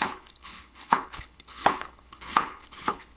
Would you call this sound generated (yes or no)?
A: yes